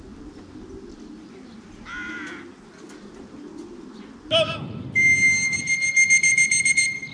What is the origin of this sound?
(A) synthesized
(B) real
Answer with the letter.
B